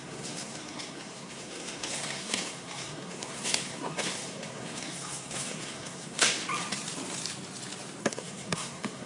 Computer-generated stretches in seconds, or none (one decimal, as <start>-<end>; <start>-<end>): 0.0-6.4; 8.0-9.1